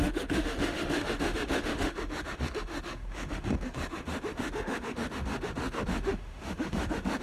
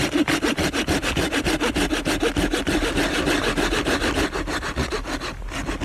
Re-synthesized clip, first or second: first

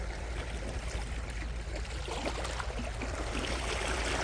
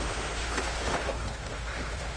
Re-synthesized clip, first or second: second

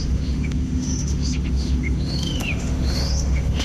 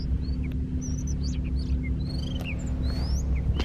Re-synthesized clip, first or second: first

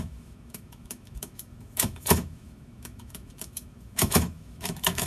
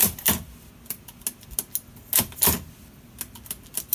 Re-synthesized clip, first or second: first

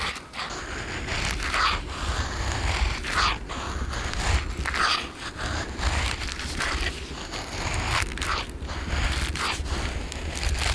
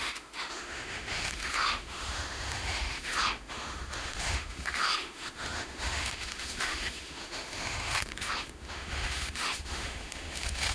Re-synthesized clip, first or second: second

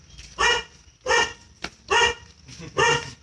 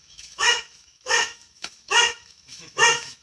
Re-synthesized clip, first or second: second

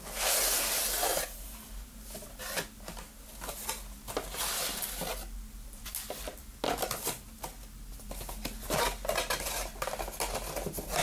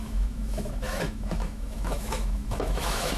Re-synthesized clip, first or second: second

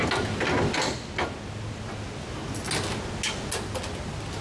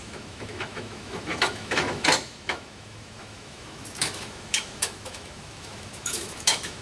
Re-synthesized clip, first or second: second